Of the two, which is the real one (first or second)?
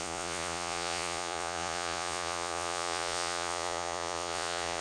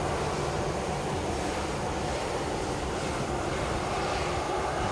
second